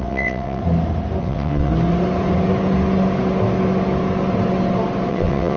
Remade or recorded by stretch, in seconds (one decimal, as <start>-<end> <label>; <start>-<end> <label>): 0.0-0.6 remade; 0.6-1.2 recorded; 1.2-1.7 remade; 1.7-5.1 recorded; 5.1-5.6 remade